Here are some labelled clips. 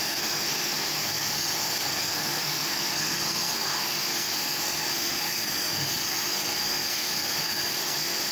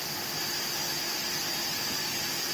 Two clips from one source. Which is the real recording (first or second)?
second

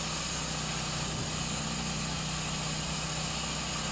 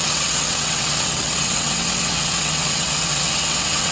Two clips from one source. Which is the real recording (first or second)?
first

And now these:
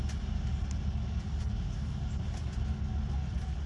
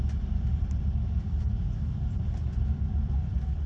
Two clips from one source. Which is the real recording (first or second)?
first